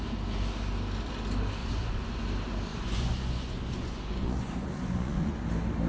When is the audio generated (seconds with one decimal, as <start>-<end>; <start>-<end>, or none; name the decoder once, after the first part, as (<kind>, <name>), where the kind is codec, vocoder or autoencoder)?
1.6-2.2 (vocoder, Vocos); 2.7-5.3